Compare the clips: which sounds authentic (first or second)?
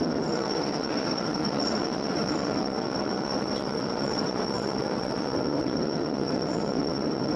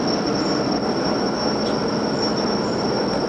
second